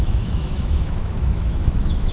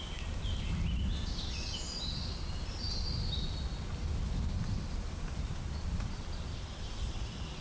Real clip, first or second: second